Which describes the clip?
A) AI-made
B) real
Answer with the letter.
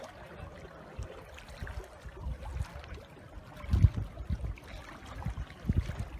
B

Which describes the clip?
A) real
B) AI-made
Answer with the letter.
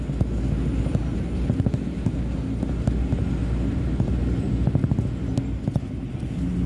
A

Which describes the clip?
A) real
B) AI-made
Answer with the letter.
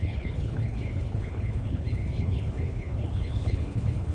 B